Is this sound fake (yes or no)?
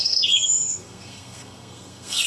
yes